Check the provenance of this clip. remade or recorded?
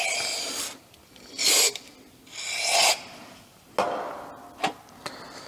recorded